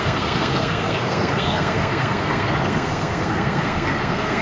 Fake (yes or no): yes